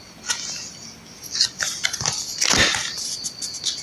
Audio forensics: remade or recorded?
recorded